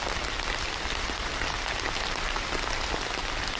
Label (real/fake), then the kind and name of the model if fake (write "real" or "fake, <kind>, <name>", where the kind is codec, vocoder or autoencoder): real